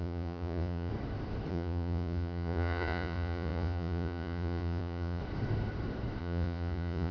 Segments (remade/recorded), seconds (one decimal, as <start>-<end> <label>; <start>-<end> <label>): 0.0-0.9 remade; 0.9-1.5 recorded; 1.5-5.2 remade; 5.2-6.2 recorded; 6.2-7.1 remade